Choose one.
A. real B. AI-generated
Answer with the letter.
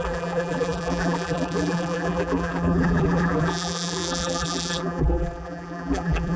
B